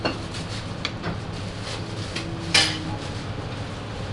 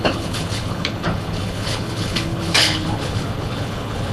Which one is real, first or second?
first